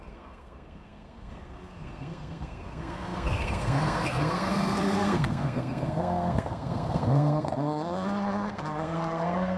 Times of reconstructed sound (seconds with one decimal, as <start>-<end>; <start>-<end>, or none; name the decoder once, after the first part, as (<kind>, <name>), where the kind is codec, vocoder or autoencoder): 0.0-9.6 (codec, SNAC)